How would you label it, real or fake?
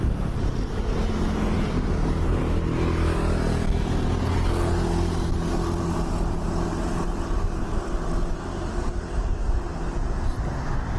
real